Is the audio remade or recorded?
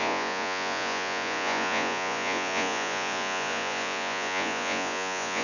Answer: remade